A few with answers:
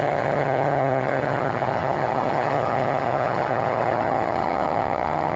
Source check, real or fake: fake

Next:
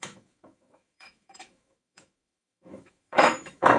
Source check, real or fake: fake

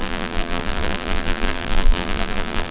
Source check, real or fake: fake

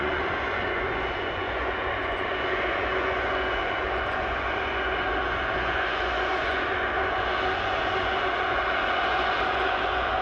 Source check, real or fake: fake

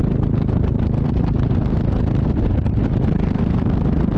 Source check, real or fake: real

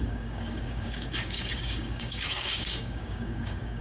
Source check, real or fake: fake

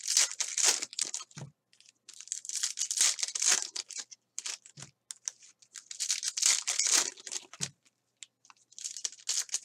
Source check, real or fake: real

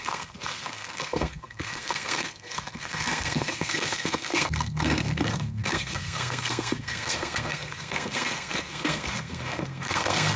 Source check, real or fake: fake